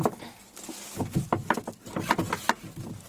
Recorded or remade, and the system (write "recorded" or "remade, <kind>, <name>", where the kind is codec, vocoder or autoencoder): recorded